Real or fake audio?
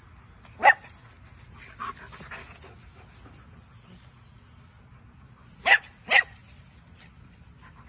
real